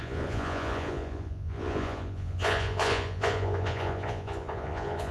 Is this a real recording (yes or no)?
no